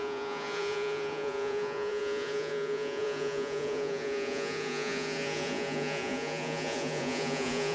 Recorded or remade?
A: remade